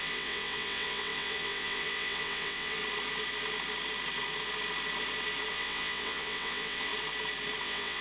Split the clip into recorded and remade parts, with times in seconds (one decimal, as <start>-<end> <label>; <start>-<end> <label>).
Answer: 0.0-2.8 remade; 2.8-5.5 recorded; 5.5-6.9 remade; 6.9-7.6 recorded; 7.6-8.0 remade